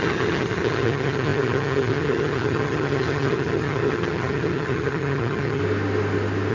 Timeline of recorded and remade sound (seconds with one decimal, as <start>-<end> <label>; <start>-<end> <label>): 0.0-5.6 remade; 5.6-6.5 recorded